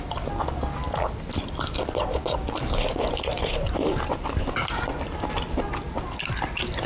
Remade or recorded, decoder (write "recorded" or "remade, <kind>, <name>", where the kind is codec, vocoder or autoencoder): recorded